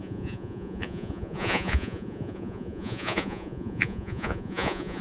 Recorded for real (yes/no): no